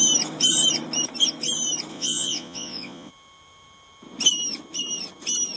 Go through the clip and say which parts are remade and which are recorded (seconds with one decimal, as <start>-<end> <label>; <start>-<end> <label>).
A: 0.0-1.9 recorded; 1.9-3.1 remade; 3.1-5.6 recorded